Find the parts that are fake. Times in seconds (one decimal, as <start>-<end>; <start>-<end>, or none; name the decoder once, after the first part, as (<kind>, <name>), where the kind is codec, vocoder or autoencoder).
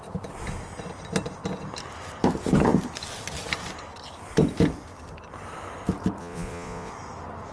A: 6.2-6.9 (vocoder, Vocos)